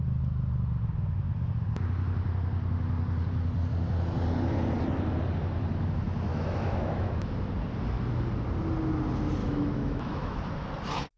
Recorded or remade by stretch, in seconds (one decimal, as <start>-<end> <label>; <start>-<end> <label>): 0.0-6.3 recorded; 6.3-7.3 remade; 7.3-9.4 recorded; 9.4-10.4 remade; 10.4-11.2 recorded